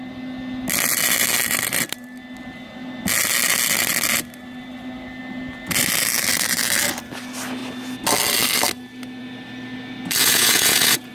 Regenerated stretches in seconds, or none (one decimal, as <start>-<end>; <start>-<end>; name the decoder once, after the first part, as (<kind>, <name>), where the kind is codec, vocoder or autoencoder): 10.2-11.1 (vocoder, Vocos)